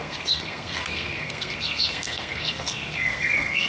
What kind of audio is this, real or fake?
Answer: fake